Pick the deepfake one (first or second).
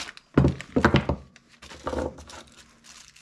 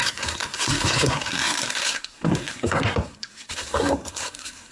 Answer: second